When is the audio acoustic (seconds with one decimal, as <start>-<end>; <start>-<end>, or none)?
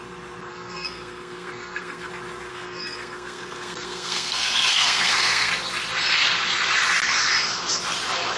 0.0-0.5; 2.1-2.5; 5.5-8.4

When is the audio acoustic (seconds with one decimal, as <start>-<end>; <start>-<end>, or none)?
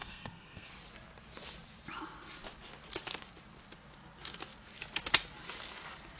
0.7-6.2